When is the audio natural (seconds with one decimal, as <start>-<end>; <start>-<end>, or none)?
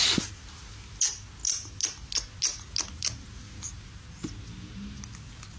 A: 0.0-5.6